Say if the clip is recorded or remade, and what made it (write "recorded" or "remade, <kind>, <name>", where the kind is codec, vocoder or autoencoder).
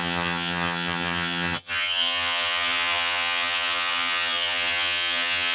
remade, vocoder, HiFi-GAN